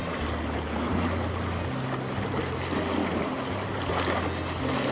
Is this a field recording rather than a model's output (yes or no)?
yes